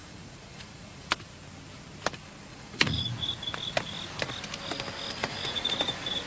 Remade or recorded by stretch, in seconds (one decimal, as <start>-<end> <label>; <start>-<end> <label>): 0.0-1.1 remade; 1.1-2.5 recorded; 2.5-3.0 remade; 3.0-5.2 recorded; 5.2-5.7 remade; 5.7-6.3 recorded